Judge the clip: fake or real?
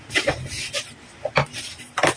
real